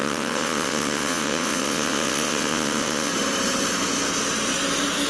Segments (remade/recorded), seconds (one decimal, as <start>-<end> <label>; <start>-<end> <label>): 0.0-3.1 remade; 3.1-5.1 recorded